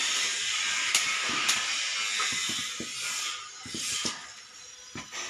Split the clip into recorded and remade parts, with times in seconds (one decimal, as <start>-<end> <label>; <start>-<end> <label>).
0.0-1.9 remade; 1.9-3.0 recorded; 3.0-5.3 remade